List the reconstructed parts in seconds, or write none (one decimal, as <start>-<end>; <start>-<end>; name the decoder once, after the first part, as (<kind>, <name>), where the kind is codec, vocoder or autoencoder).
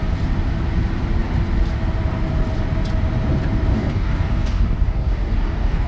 3.7-5.9 (codec, DAC)